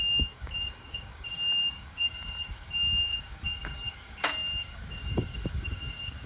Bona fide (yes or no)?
no